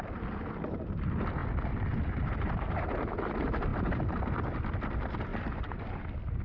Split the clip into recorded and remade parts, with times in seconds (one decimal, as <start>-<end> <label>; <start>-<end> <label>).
0.0-3.7 recorded; 3.7-4.2 remade; 4.2-5.3 recorded; 5.3-5.8 remade; 5.8-6.4 recorded